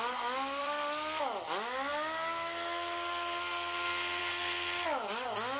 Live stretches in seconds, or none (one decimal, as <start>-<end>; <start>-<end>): 0.0-0.6; 1.2-5.6